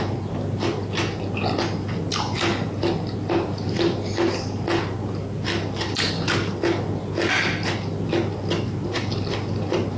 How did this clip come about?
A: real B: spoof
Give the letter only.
A